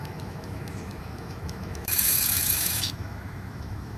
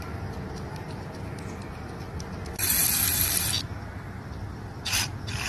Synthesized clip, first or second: first